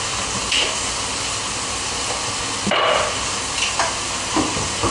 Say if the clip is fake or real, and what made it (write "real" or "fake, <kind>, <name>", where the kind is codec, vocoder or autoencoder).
real